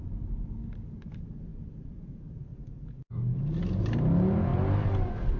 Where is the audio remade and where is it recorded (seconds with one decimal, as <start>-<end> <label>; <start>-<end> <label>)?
0.0-1.5 recorded; 1.5-2.0 remade; 2.0-4.5 recorded; 4.5-5.4 remade